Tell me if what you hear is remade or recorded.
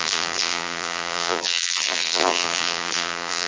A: remade